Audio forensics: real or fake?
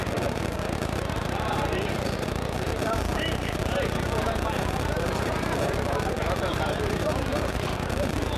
fake